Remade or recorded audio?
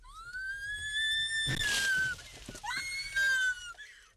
recorded